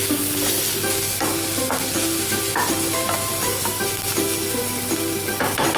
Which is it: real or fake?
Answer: real